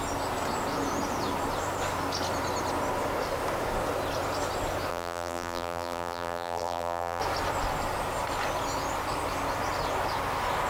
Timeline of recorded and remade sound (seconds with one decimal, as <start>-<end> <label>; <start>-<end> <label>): 0.0-4.9 recorded; 4.9-7.2 remade; 7.2-10.7 recorded